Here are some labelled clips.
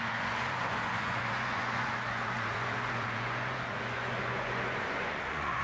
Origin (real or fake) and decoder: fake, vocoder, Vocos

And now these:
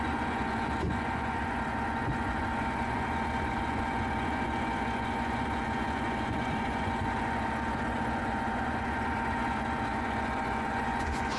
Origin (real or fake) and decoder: fake, vocoder, Vocos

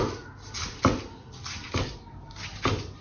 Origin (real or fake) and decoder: real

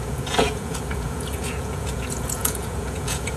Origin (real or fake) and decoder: fake, vocoder, Vocos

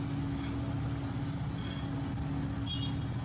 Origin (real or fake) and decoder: real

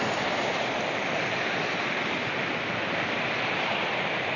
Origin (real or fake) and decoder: real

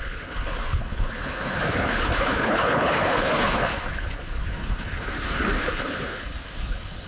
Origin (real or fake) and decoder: fake, codec, HILCodec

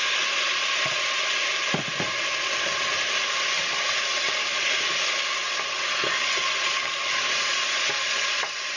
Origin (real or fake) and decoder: real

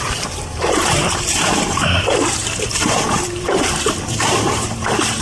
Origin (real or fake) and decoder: fake, vocoder, BigVGAN v2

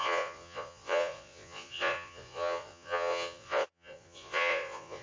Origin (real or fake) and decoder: fake, vocoder, Vocos